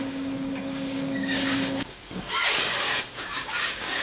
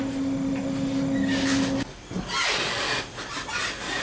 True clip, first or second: second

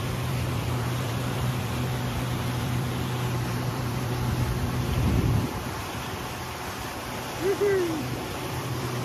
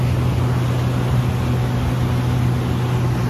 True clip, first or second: second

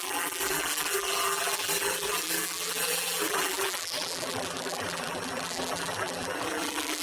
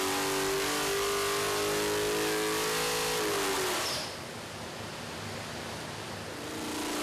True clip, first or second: second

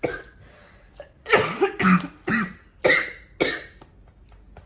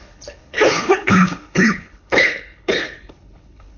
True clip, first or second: first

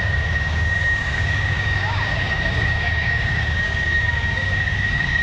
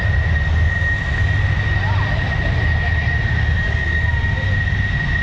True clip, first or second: second